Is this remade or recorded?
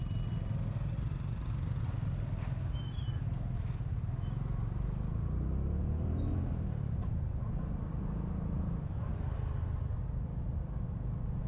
recorded